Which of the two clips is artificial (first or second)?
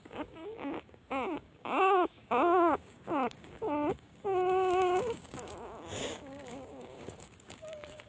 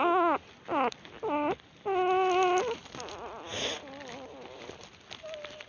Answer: first